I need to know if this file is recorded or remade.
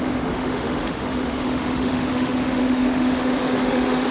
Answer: remade